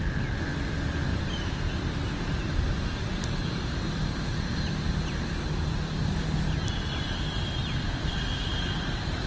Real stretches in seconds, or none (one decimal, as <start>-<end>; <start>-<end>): 0.0-1.1; 1.7-2.4; 4.7-8.5

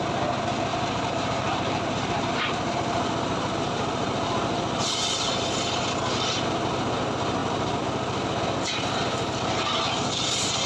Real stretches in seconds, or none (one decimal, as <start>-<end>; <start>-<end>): 0.0-0.7; 5.3-10.7

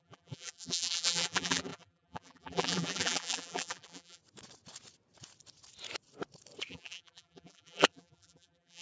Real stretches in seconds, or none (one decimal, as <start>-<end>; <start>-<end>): 4.2-6.7

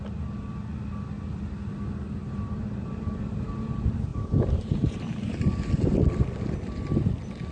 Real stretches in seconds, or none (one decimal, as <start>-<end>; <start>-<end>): 0.0-2.2; 3.0-4.1; 5.5-7.5

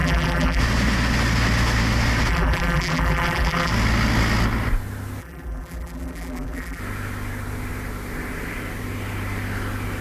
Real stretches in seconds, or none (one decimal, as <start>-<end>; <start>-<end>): 0.6-2.3; 3.7-5.2; 6.8-10.0

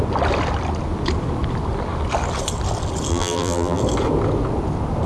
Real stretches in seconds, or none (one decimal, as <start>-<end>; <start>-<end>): 0.0-3.1; 3.8-5.1

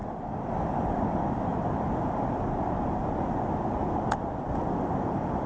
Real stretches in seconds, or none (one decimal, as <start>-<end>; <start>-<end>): 1.5-4.8

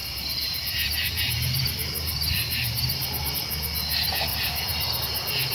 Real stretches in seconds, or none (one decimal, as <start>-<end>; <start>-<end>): 3.3-4.3; 5.0-5.5